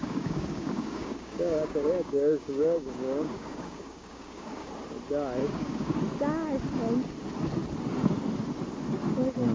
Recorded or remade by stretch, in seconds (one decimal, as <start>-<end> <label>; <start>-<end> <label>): 0.0-4.7 remade; 4.7-5.4 recorded; 5.4-6.0 remade; 6.0-9.5 recorded